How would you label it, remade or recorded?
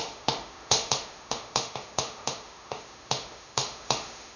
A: remade